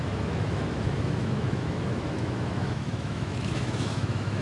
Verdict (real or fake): fake